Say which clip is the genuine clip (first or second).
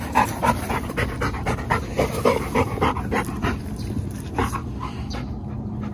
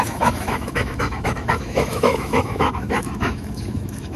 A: first